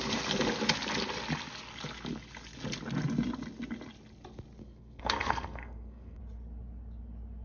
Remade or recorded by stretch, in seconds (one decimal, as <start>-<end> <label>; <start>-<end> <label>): 0.0-4.6 recorded; 4.6-6.2 remade; 6.2-7.4 recorded